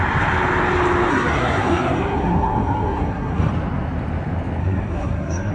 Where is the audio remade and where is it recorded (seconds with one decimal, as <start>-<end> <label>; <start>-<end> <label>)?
0.0-1.1 recorded; 1.1-3.5 remade; 3.5-4.6 recorded; 4.6-5.5 remade